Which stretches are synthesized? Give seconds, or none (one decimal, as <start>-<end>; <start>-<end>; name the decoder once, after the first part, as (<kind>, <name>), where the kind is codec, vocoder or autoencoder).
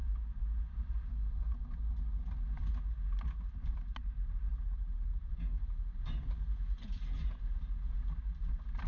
0.0-1.6 (vocoder, BigVGAN v2); 5.1-7.4